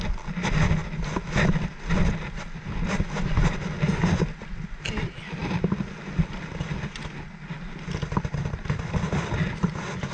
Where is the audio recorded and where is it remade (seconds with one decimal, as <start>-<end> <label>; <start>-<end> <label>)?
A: 0.0-10.1 recorded